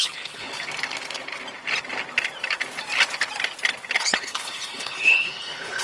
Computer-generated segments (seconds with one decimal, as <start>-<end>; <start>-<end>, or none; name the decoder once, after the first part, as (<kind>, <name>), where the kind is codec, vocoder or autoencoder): 0.0-0.5 (codec, HILCodec); 4.0-5.8